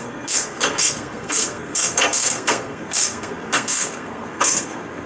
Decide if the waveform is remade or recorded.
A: remade